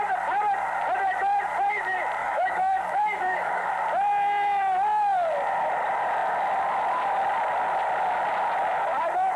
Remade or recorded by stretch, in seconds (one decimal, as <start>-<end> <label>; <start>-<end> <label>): 0.0-2.2 recorded; 2.2-3.7 remade; 3.7-9.4 recorded